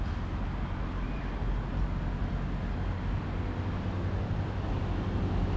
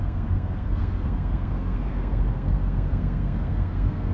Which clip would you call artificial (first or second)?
second